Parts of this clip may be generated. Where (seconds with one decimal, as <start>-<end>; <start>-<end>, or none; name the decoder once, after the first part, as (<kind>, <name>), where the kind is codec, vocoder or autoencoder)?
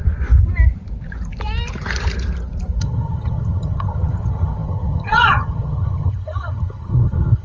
2.8-7.4 (vocoder, HiFi-GAN)